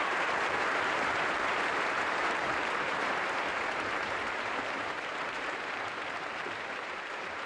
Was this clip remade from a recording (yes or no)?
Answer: yes